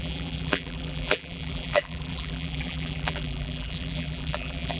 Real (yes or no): no